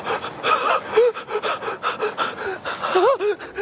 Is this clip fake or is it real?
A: real